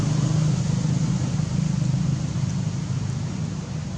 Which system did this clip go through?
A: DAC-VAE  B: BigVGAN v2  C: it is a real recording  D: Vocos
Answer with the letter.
C